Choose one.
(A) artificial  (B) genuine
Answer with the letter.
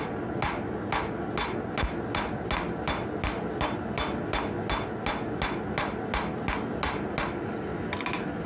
B